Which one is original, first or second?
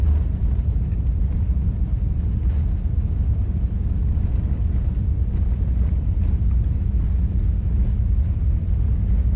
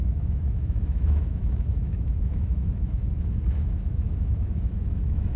first